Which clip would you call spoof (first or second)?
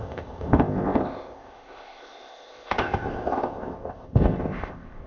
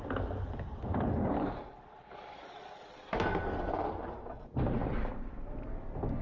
first